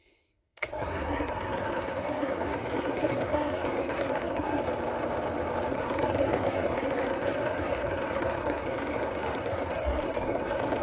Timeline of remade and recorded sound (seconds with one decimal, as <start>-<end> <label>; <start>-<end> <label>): 0.0-4.6 remade; 4.6-5.7 recorded; 5.7-10.8 remade